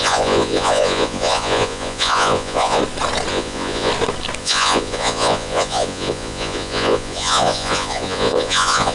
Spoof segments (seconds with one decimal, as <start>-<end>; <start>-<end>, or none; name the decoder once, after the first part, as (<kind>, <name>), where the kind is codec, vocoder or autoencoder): 0.0-2.8 (vocoder, Vocos); 3.3-3.9; 4.4-8.9